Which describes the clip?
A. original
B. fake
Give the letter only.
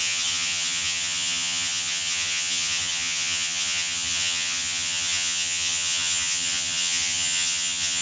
B